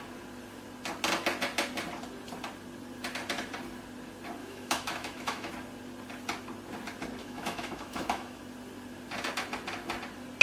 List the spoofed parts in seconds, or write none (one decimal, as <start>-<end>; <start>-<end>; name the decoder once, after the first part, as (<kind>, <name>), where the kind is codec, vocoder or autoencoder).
4.4-5.5 (autoencoder, DAC-VAE); 7.2-8.4

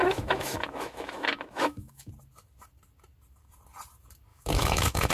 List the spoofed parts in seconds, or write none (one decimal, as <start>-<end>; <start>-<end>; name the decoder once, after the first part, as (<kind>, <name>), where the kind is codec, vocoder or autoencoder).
0.0-2.1 (autoencoder, DAC-VAE); 4.3-5.1

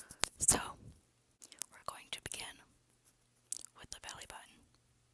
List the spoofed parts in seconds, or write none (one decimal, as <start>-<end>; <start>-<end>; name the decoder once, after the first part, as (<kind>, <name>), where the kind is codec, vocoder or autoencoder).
none

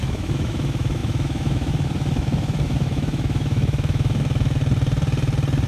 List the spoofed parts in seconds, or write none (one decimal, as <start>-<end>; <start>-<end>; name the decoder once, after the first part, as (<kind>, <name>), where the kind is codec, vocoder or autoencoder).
0.0-4.6 (autoencoder, DAC-VAE)